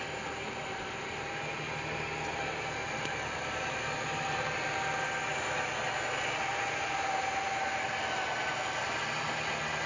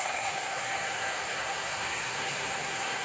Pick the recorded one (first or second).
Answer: first